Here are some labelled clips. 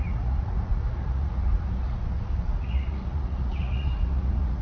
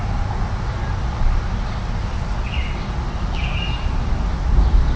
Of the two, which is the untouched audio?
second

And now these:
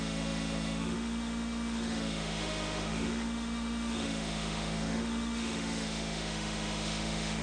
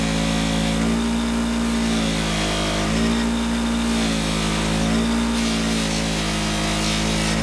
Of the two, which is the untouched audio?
second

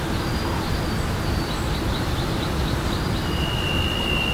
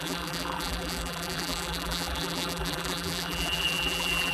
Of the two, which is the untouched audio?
first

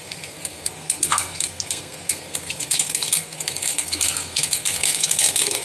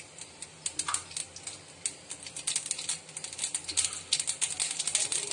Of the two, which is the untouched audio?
second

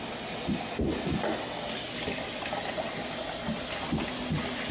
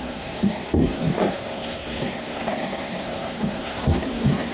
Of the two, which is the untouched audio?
first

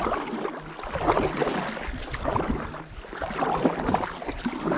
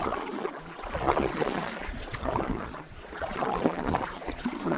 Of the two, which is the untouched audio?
first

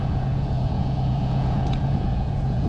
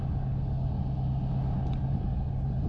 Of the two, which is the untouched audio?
second